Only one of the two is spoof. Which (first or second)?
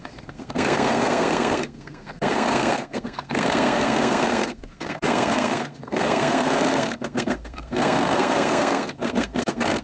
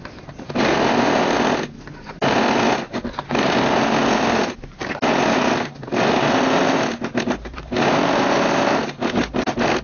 first